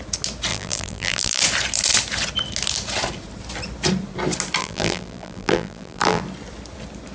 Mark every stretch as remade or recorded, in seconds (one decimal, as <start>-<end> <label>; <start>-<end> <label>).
0.0-0.5 recorded; 0.5-1.4 remade; 1.4-4.6 recorded; 4.6-6.2 remade; 6.2-7.1 recorded